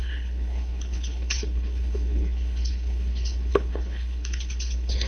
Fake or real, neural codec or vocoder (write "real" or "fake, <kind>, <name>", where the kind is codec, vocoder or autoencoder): fake, codec, HILCodec